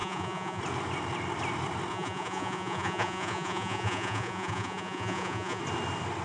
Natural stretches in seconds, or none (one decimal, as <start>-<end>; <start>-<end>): 0.6-1.9; 5.6-6.2